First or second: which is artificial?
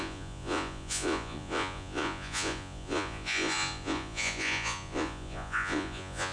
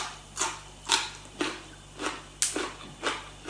first